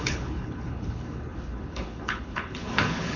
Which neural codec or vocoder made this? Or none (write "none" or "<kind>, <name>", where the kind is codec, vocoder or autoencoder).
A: codec, HILCodec